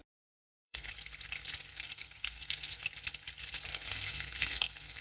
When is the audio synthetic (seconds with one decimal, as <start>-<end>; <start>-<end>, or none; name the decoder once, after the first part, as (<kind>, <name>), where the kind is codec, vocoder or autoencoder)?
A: 0.4-0.9 (codec, SNAC); 1.7-2.8; 3.7-5.0